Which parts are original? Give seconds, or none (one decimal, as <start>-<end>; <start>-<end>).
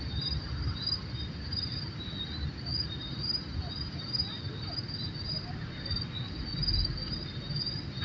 0.0-2.7; 3.9-8.0